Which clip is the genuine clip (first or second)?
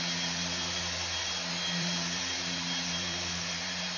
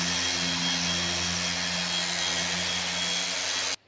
second